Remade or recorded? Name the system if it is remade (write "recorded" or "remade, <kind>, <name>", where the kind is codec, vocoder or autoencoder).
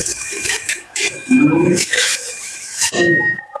remade, autoencoder, DAC-VAE